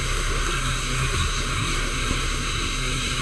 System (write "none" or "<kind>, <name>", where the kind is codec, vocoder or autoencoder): codec, SNAC